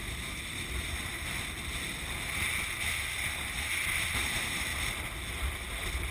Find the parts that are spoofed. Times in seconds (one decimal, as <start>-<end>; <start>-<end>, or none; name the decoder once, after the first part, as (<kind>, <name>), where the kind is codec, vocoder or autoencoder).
none